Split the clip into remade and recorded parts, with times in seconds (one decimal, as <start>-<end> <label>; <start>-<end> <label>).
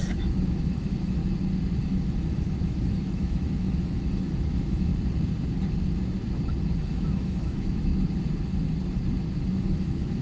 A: 0.0-1.2 remade; 1.2-1.8 recorded; 1.8-4.9 remade; 4.9-6.8 recorded; 6.8-7.9 remade; 7.9-9.6 recorded; 9.6-10.2 remade